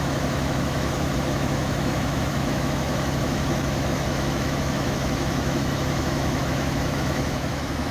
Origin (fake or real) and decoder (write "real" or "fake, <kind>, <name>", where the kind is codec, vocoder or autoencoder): fake, autoencoder, DAC-VAE